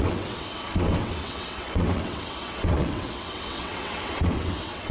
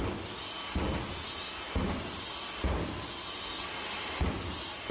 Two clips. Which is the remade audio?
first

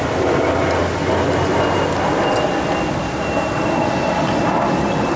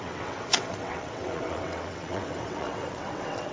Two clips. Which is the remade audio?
second